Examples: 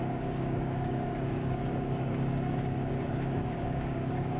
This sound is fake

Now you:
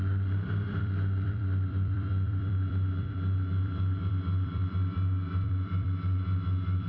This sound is fake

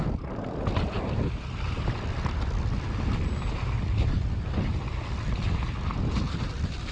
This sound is real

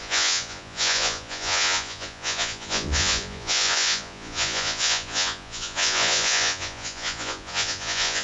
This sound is fake